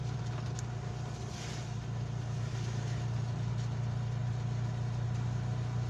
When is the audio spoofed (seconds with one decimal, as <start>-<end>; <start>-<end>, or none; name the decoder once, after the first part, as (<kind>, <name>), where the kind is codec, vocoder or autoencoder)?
none